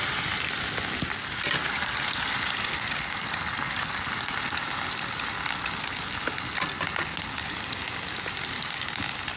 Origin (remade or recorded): recorded